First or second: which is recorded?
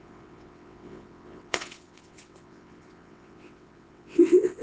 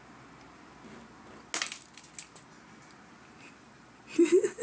second